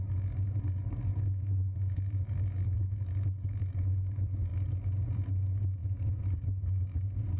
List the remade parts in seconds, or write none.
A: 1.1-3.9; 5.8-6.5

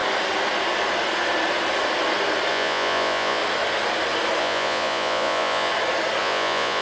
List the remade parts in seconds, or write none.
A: 2.5-3.4; 4.4-5.7; 6.2-6.8

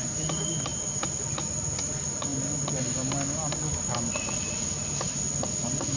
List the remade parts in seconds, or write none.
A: none